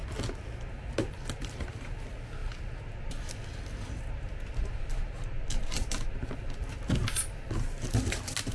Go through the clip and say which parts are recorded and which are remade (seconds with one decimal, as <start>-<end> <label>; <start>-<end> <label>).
0.0-8.5 recorded